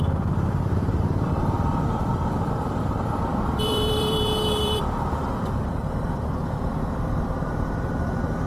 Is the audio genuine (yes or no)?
no